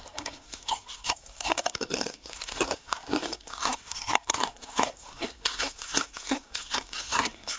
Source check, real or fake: fake